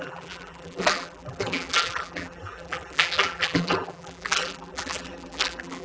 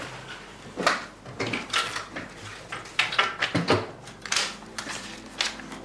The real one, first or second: second